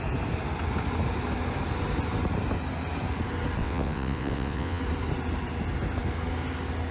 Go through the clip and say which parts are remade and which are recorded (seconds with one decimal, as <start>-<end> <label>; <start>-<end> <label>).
0.0-3.6 recorded; 3.6-4.8 remade; 4.8-6.9 recorded